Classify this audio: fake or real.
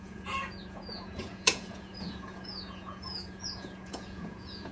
fake